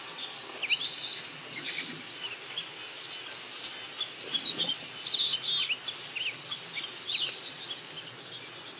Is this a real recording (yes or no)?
yes